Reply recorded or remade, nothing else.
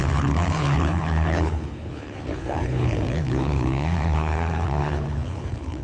remade